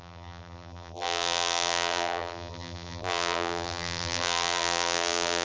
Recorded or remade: remade